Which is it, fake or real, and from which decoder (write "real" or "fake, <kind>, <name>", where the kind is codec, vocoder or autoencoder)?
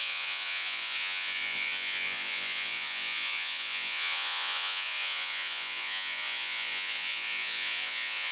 fake, vocoder, Vocos